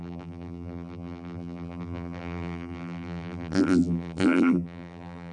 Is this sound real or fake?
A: fake